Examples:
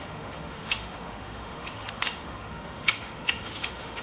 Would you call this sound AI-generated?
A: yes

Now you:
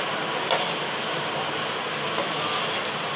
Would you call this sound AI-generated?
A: no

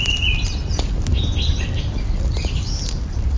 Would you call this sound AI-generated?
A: no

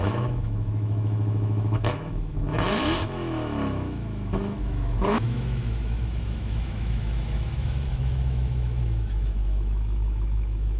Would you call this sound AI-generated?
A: yes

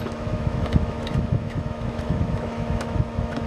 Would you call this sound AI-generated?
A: yes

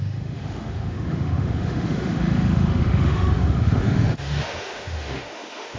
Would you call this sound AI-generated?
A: yes